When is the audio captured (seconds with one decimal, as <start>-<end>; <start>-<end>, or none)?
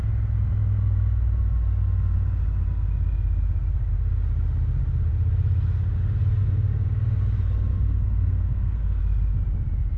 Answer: 0.0-7.7; 9.0-10.0